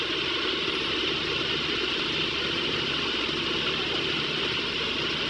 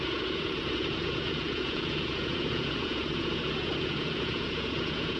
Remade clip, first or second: second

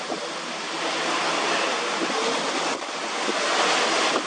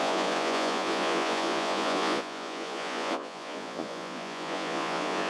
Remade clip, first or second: second